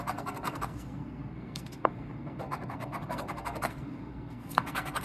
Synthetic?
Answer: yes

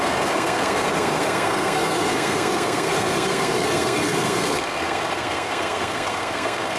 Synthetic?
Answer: yes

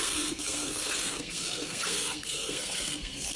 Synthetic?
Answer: yes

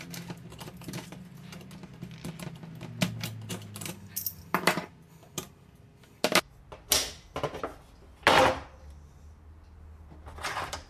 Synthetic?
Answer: no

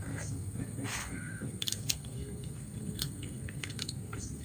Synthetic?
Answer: yes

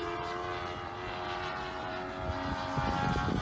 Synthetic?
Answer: no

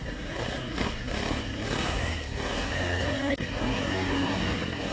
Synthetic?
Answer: yes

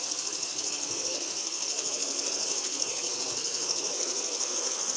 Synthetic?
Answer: yes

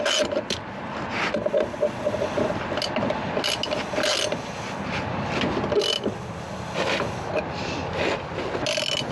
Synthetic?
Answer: no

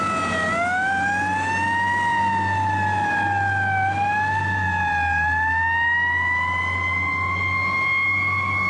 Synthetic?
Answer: no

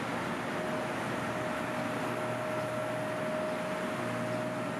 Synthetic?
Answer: no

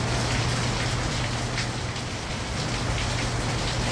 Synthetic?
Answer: no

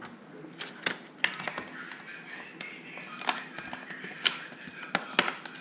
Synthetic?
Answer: no